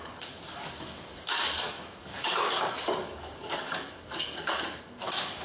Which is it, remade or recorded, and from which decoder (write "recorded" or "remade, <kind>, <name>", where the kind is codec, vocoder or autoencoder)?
remade, codec, DAC